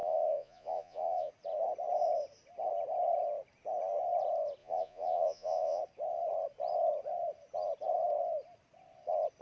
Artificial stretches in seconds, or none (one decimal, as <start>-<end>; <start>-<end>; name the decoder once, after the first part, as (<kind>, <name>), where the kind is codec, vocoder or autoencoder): 0.0-1.3 (vocoder, Vocos); 4.6-5.8